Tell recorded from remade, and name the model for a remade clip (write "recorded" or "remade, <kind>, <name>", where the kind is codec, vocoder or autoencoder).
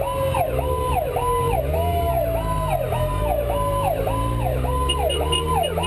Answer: recorded